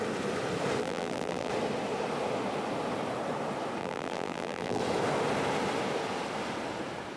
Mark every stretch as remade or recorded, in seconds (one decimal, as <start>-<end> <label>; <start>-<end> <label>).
0.0-0.8 recorded; 0.8-1.5 remade; 1.5-3.8 recorded; 3.8-4.8 remade; 4.8-7.2 recorded

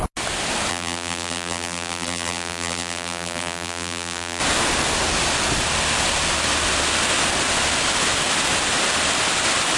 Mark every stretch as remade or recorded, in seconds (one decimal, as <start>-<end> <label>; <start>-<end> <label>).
0.0-0.7 recorded; 0.7-4.4 remade; 4.4-9.8 recorded

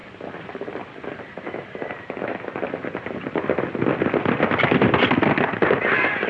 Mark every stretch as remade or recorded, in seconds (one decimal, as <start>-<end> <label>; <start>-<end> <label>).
0.0-6.3 recorded

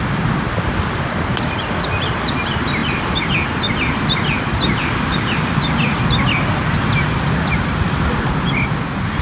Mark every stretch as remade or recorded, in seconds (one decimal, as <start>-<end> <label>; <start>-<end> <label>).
0.0-9.2 remade

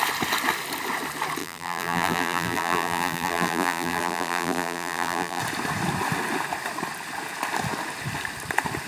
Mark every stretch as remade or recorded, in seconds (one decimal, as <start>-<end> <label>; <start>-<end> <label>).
0.0-1.4 recorded; 1.4-5.4 remade; 5.4-8.9 recorded

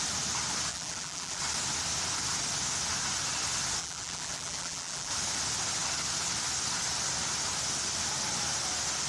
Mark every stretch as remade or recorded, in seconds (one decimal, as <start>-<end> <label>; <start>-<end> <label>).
0.0-0.7 recorded; 0.7-1.4 remade; 1.4-3.8 recorded; 3.8-5.1 remade; 5.1-9.1 recorded